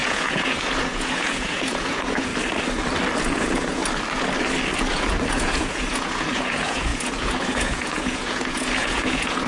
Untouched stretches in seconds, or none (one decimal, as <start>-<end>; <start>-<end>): 2.3-3.2; 3.8-4.9